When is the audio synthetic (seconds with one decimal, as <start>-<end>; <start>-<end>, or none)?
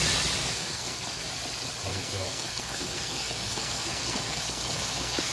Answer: 0.4-1.3; 1.9-5.3